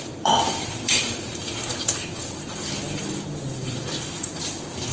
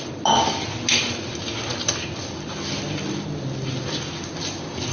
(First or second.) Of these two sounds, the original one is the second